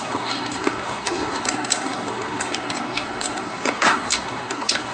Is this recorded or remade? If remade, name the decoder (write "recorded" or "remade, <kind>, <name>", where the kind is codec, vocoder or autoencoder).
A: remade, codec, SNAC